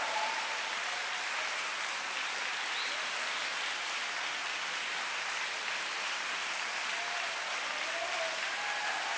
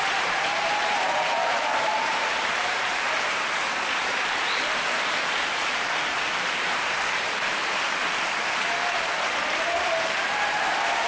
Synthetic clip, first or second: second